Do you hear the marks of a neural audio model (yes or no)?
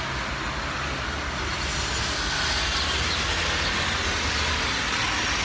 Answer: no